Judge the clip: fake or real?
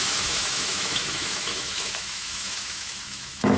fake